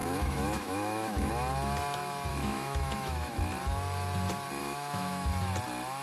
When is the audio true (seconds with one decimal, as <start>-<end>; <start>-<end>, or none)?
1.3-2.3; 3.4-4.6; 5.3-6.0